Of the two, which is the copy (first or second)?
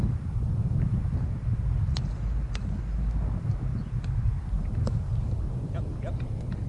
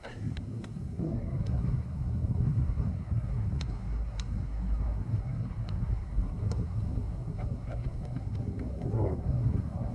second